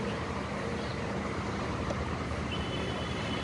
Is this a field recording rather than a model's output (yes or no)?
no